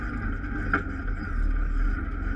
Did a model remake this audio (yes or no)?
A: no